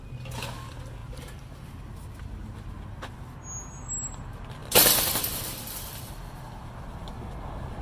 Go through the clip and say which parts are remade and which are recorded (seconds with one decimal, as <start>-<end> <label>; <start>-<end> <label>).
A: 0.0-4.6 recorded; 4.6-6.1 remade; 6.1-7.8 recorded